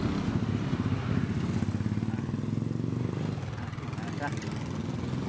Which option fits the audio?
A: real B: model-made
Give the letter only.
A